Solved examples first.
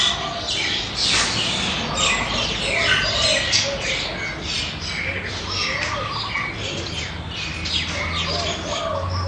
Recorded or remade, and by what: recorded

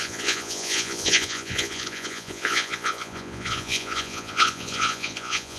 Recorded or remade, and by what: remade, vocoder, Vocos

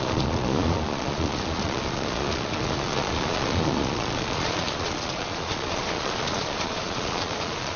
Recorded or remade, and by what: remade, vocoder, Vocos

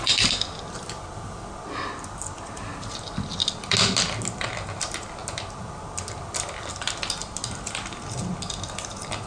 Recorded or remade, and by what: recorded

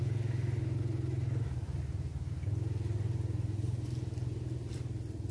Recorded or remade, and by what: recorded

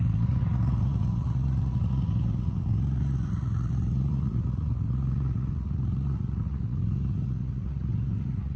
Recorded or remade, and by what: remade, vocoder, Vocos